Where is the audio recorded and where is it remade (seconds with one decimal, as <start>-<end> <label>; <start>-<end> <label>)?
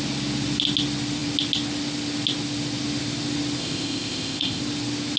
0.0-3.6 recorded; 3.6-4.6 remade; 4.6-5.2 recorded